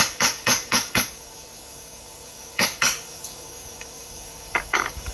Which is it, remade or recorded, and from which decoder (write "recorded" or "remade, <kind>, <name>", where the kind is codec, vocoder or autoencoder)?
remade, codec, DAC